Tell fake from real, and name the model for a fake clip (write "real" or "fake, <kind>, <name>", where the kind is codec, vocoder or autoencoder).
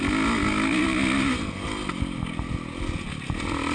real